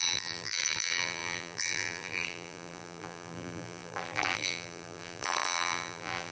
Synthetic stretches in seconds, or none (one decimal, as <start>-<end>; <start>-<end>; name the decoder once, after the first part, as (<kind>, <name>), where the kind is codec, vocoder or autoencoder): 0.0-6.3 (vocoder, BigVGAN v2)